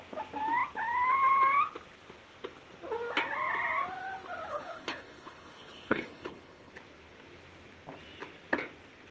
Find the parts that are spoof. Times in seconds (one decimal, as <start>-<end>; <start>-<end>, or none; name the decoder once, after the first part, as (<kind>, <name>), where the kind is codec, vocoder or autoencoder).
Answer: 4.5-6.7 (codec, HILCodec)